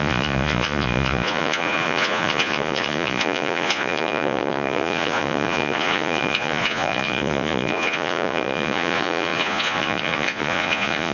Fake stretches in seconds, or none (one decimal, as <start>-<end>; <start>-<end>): 0.0-11.1